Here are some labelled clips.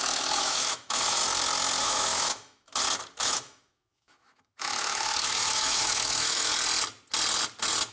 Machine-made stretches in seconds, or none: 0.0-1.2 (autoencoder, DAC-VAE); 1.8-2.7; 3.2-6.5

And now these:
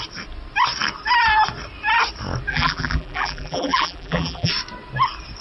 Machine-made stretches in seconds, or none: 2.5-4.5 (vocoder, BigVGAN v2)

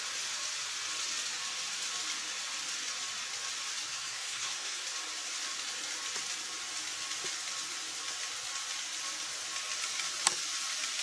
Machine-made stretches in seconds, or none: 3.9-4.8 (codec, SNAC)

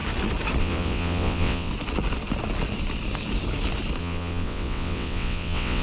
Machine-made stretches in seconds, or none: 0.6-1.7 (vocoder, WaveNeXt); 4.0-5.8